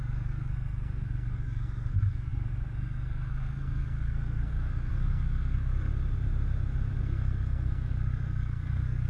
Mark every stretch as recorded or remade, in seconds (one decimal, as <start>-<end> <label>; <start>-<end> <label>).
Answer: 0.0-5.9 remade; 5.9-7.0 recorded; 7.0-9.1 remade